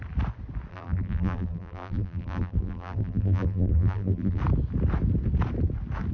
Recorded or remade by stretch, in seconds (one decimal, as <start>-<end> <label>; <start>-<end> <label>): 0.0-0.7 recorded; 0.7-4.4 remade; 4.4-6.1 recorded